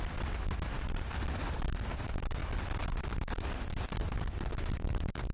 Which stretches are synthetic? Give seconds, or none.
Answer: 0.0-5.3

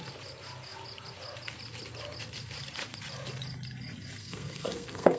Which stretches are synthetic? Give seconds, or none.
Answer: 4.2-5.2

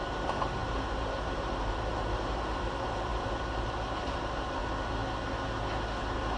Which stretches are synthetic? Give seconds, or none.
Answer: 0.0-5.0; 6.0-6.4

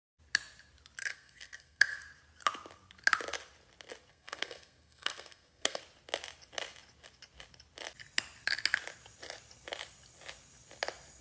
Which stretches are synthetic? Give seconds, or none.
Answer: 1.0-2.0; 4.1-5.8

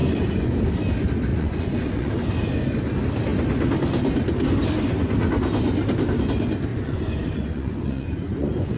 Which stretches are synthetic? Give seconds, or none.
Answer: 0.0-0.6; 1.3-2.1; 6.7-8.8

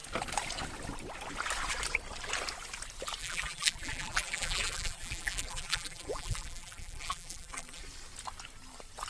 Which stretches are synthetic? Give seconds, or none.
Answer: 3.2-7.8